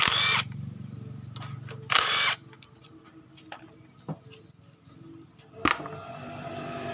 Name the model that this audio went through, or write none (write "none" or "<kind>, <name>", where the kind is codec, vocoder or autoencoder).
none